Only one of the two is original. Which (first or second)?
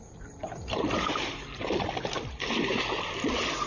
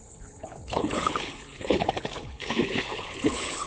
first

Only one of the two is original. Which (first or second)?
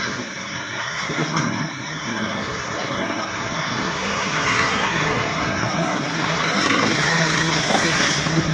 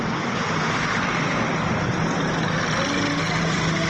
second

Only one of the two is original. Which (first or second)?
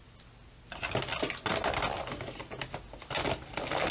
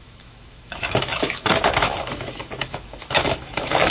first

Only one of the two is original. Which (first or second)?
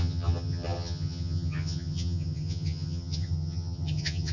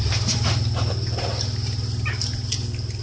second